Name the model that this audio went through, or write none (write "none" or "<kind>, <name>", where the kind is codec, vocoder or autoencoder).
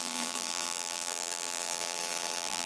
vocoder, BigVGAN v2